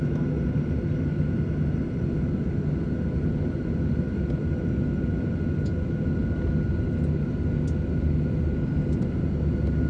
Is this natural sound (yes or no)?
yes